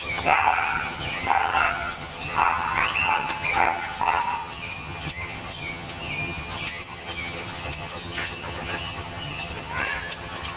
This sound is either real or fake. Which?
fake